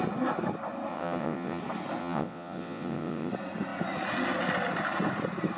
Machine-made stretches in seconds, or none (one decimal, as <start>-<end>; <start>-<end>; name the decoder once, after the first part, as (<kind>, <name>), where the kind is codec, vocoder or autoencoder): 0.9-1.6 (vocoder, WaveNeXt); 2.0-3.3